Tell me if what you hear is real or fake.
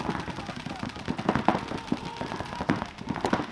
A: real